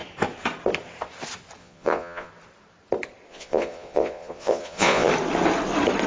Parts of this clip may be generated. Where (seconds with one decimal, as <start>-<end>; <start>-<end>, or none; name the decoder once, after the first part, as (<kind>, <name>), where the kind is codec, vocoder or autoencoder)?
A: 1.6-2.3 (vocoder, Vocos); 3.3-5.1